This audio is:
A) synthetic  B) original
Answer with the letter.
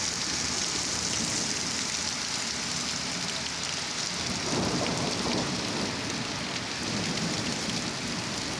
B